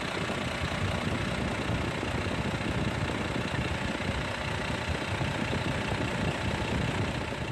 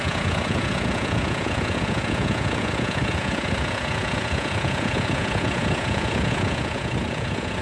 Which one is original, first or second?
first